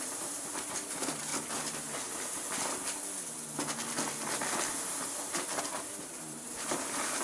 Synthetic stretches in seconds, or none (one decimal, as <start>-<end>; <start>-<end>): 0.0-1.3; 5.6-7.2